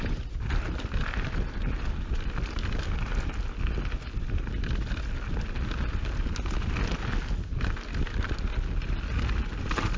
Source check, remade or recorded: recorded